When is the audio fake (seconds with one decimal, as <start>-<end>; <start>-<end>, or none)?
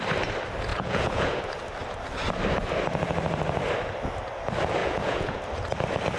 0.7-1.4; 4.8-5.4